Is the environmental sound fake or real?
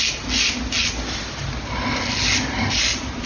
real